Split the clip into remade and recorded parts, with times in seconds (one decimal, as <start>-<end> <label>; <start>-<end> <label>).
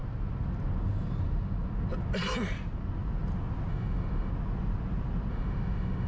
0.0-3.7 recorded; 3.7-4.3 remade; 4.3-5.3 recorded; 5.3-6.1 remade